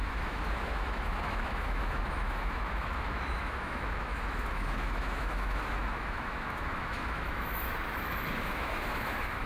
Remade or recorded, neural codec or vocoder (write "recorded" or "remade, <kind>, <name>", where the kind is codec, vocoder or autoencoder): remade, autoencoder, DAC-VAE